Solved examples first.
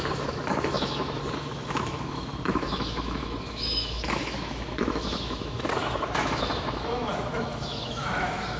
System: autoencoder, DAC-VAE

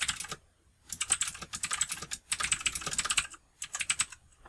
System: none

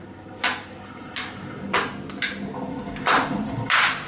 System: none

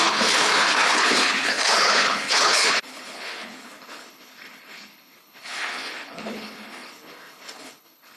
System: codec, HILCodec